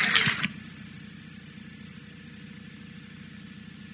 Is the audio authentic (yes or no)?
yes